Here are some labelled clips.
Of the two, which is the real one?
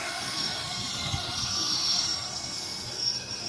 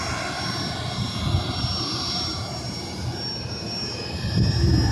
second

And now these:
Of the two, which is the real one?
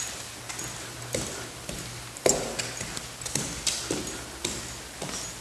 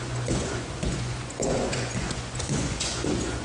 first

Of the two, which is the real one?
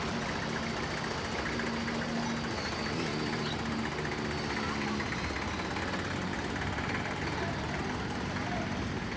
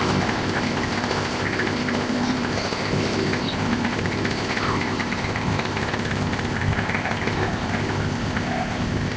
first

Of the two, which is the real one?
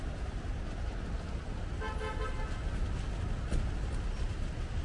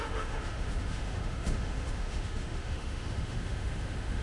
first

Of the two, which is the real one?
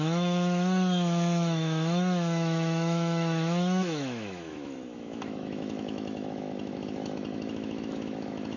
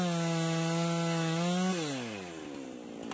second